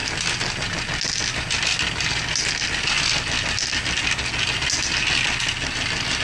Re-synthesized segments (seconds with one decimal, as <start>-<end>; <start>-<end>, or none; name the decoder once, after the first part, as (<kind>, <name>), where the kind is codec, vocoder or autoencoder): none